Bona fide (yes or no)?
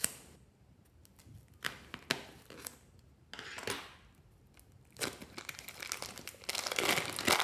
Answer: yes